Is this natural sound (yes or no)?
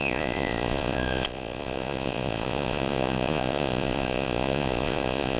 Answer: no